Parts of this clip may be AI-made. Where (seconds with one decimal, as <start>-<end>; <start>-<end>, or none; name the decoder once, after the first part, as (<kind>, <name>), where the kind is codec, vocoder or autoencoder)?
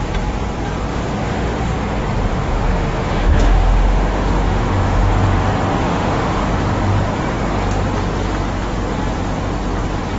0.9-1.6 (autoencoder, DAC-VAE); 2.3-5.1; 5.8-6.4